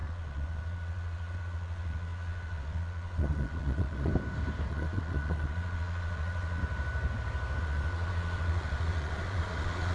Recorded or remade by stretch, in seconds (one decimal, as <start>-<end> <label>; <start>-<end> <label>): 0.0-4.1 remade; 4.1-4.7 recorded; 4.7-6.6 remade; 6.6-7.6 recorded; 7.6-9.9 remade